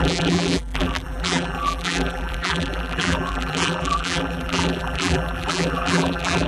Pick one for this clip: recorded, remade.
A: remade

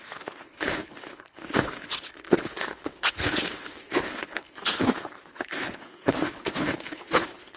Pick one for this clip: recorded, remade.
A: remade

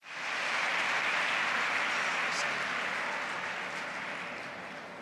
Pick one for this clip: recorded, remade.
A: recorded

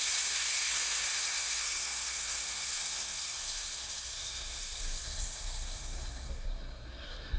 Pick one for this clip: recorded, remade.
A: remade